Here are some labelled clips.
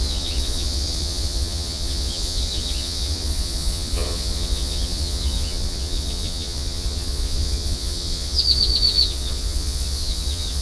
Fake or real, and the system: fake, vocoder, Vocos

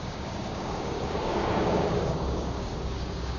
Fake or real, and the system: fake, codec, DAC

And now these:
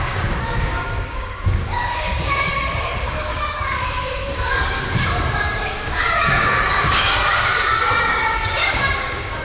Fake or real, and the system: fake, codec, DAC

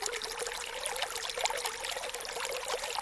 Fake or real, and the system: real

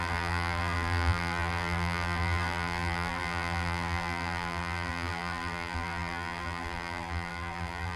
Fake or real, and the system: fake, vocoder, BigVGAN v2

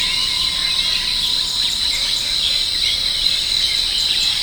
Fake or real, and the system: real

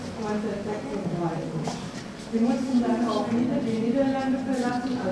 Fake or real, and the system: real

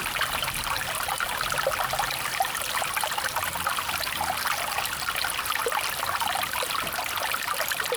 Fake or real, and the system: real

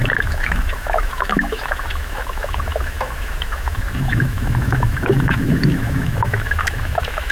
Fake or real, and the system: fake, autoencoder, DAC-VAE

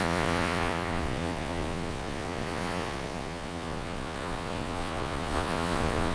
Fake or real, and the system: fake, vocoder, Vocos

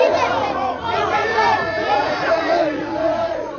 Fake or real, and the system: fake, vocoder, Vocos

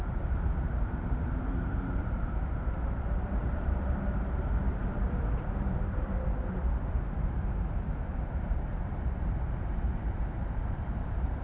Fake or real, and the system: fake, vocoder, BigVGAN v2